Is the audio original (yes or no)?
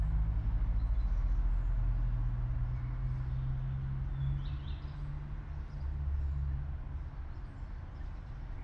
yes